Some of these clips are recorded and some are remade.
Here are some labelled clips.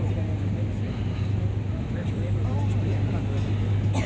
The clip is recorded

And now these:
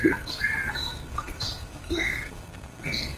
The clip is remade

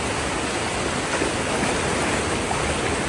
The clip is recorded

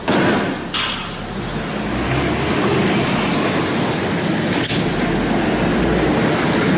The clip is recorded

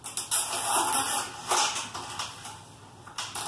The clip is recorded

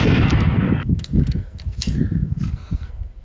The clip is remade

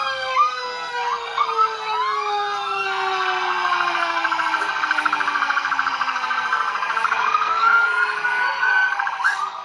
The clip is remade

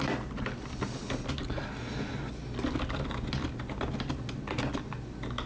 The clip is recorded